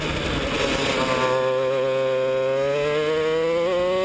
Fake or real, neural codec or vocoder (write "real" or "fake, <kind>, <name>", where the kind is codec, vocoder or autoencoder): real